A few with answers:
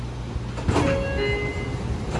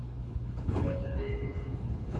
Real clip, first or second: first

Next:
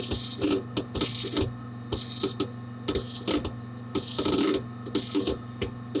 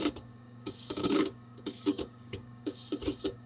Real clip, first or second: first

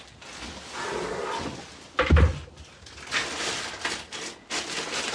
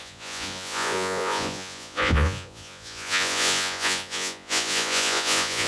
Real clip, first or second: first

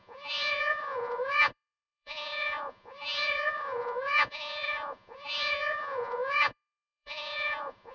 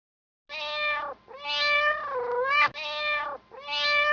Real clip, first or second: second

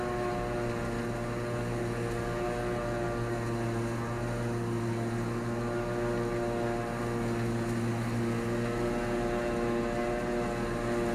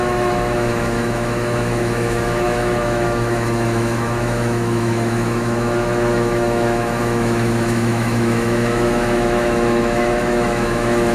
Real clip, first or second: first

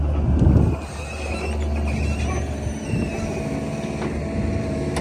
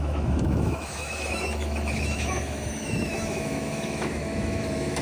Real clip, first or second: first